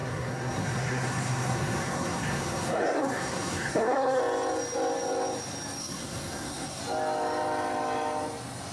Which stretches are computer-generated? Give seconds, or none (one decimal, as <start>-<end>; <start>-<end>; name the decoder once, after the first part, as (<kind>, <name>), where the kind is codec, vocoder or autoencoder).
0.0-4.2 (codec, SNAC); 5.8-6.8

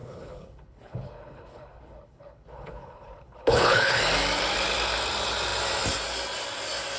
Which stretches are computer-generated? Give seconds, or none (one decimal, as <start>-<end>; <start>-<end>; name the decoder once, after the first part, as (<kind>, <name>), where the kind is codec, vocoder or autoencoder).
0.0-4.0 (codec, HILCodec)

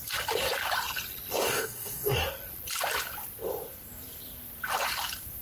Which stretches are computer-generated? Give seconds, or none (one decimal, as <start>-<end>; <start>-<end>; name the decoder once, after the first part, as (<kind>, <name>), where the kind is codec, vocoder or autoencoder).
1.5-2.2 (codec, DAC)